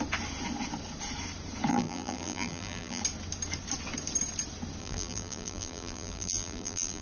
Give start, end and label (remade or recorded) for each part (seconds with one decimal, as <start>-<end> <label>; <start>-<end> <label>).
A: 0.0-1.7 recorded; 1.7-3.0 remade; 3.0-4.8 recorded; 4.8-7.0 remade